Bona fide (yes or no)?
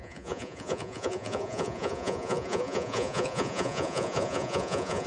no